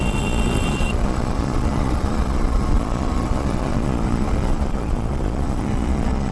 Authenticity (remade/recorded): remade